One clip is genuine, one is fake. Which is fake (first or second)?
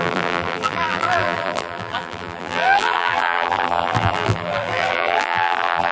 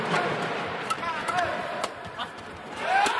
first